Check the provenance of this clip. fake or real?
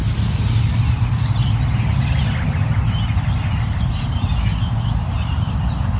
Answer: real